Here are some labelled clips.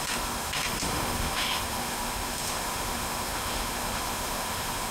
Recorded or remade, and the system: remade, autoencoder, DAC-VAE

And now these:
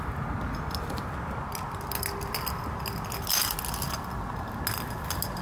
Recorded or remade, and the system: recorded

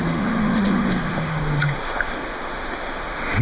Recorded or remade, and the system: remade, autoencoder, DAC-VAE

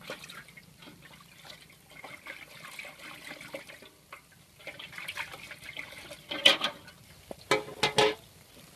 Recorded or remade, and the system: recorded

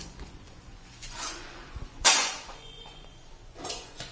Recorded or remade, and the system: remade, vocoder, Vocos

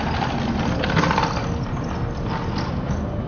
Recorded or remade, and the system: recorded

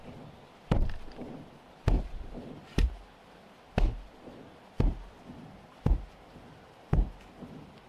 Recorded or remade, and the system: recorded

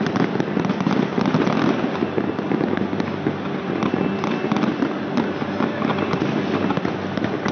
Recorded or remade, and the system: recorded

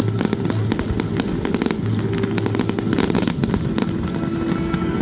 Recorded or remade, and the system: recorded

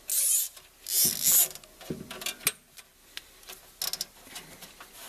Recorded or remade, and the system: recorded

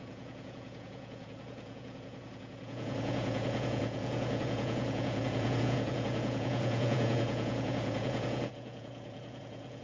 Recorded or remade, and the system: remade, vocoder, Vocos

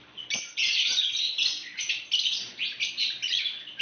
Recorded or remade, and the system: remade, vocoder, BigVGAN v2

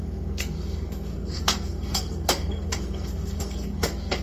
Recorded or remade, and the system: remade, codec, SNAC